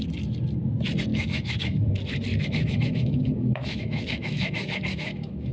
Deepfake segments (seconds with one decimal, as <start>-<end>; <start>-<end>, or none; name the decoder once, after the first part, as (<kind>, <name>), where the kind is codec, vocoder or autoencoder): 1.1-1.9 (autoencoder, DAC-VAE); 2.3-5.5